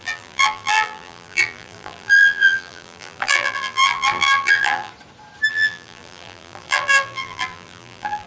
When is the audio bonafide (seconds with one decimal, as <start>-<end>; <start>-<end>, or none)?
4.9-5.5

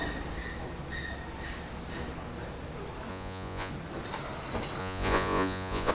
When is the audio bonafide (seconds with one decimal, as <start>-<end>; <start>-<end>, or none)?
0.0-3.1; 3.7-4.8

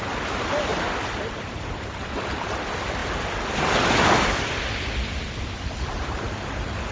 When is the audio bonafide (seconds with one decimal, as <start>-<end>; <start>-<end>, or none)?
0.0-6.9